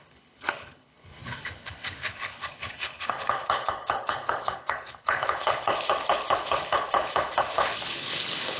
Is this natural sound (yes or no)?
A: no